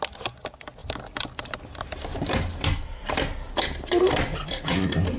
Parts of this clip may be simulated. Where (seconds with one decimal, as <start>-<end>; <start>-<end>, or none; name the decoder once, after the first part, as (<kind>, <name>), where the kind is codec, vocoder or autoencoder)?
0.8-1.6 (vocoder, BigVGAN v2); 2.1-5.2

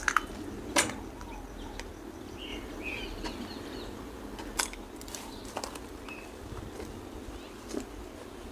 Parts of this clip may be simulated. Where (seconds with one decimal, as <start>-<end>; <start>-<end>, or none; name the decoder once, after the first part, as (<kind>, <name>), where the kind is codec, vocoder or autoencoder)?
none

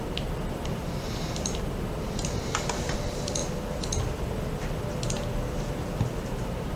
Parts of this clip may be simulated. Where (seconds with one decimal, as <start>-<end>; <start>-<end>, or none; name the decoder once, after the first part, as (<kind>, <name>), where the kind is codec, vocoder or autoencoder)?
0.0-3.4 (vocoder, BigVGAN v2); 6.0-6.8

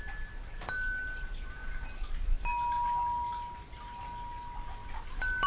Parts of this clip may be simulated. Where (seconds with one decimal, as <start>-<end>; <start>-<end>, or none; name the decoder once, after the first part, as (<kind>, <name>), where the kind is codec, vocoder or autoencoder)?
none